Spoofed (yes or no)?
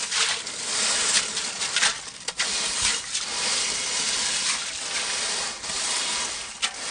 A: no